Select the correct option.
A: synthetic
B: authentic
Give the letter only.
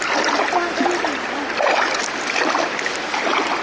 B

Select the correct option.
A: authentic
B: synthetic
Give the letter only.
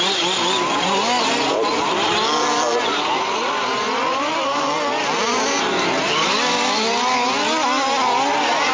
A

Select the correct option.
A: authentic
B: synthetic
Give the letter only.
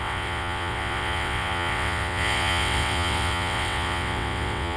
B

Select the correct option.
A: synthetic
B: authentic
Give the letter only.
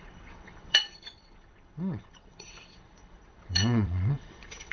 A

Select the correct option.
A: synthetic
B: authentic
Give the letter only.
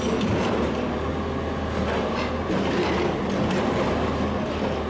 B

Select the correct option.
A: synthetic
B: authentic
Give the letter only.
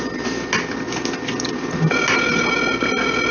B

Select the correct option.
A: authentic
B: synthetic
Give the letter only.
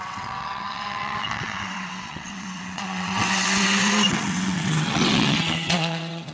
B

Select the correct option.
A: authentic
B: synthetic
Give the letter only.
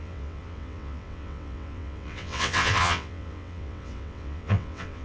B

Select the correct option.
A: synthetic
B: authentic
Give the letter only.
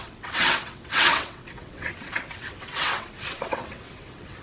A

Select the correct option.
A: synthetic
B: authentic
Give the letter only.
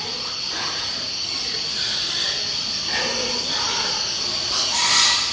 B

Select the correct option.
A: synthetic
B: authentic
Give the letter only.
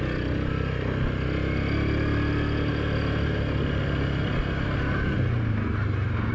B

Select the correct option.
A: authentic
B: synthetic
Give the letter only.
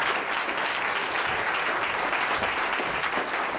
A